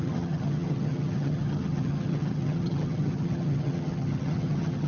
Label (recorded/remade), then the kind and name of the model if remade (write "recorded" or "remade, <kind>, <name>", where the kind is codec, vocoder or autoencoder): remade, vocoder, HiFi-GAN